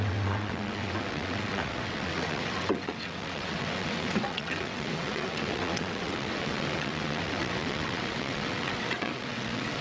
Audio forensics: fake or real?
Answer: fake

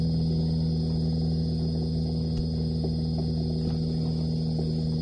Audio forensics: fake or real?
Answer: real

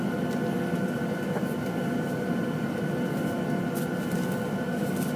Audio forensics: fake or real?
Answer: real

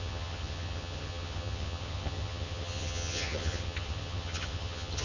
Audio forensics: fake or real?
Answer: fake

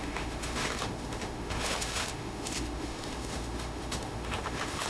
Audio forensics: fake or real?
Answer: fake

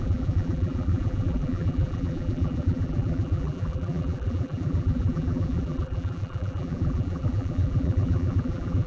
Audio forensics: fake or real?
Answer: fake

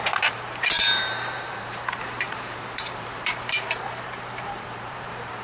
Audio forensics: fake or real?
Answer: fake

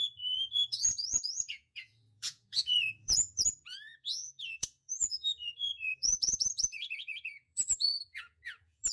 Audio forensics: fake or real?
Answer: fake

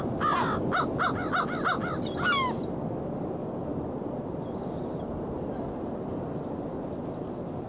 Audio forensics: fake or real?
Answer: real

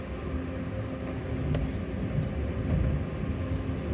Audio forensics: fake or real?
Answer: real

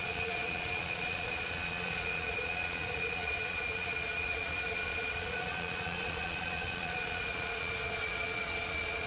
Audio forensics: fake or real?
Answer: fake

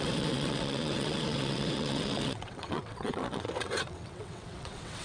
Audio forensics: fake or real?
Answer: fake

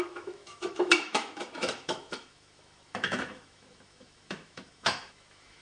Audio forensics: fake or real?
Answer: fake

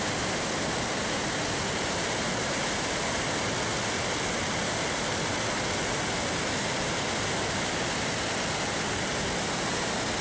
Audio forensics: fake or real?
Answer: real